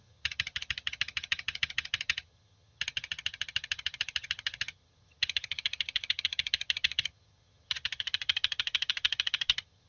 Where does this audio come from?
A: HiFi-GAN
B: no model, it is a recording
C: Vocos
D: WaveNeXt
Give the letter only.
A